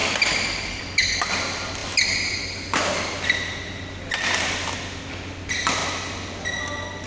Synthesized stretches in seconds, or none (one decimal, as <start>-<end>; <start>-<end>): none